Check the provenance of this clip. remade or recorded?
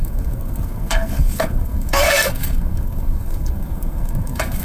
remade